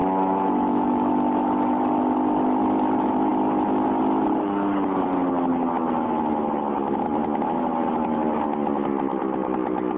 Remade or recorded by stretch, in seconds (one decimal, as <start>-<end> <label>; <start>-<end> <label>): 0.0-1.1 remade; 1.1-10.0 recorded

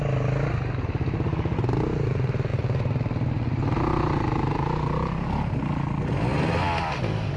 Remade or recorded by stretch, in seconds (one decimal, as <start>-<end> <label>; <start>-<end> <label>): 0.0-7.4 recorded

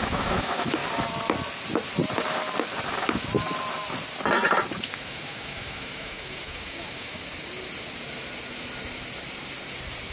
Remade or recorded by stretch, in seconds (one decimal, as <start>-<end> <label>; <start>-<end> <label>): 0.0-0.8 remade; 0.8-4.8 recorded; 4.8-7.2 remade; 7.2-10.1 recorded